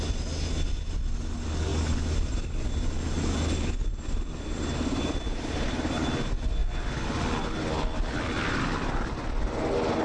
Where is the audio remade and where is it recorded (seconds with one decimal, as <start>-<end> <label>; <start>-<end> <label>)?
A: 0.0-10.0 recorded